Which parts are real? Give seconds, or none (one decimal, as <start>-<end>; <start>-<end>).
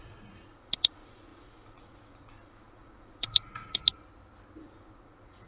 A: 3.8-4.6